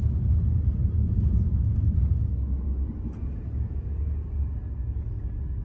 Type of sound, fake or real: real